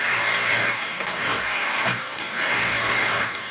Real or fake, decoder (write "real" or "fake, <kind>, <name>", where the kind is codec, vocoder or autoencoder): fake, codec, DAC